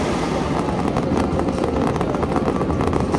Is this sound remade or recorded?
recorded